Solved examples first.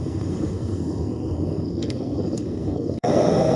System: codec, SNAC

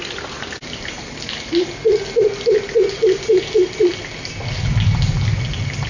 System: none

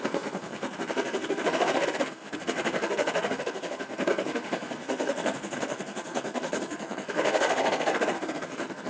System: codec, SNAC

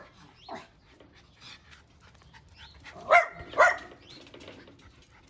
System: none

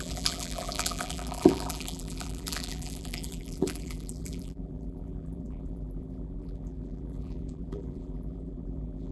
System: vocoder, BigVGAN v2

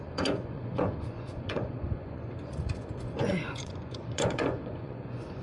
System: vocoder, Vocos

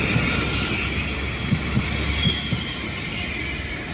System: none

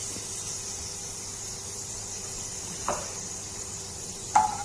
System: vocoder, BigVGAN v2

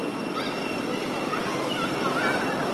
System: none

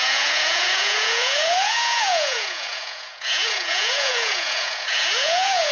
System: vocoder, Vocos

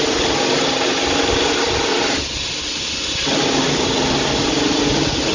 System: none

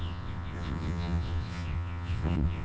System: vocoder, WaveNeXt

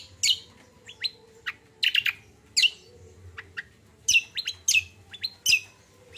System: none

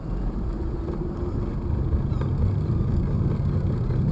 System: none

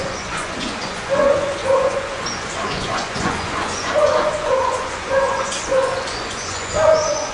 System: vocoder, Vocos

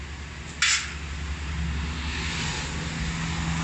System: none